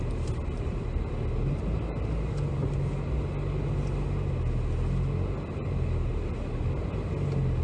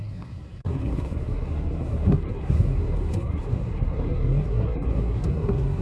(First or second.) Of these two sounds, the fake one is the second